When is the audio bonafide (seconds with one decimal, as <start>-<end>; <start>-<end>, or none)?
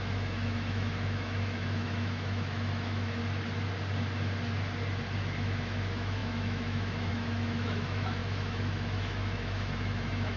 3.2-5.4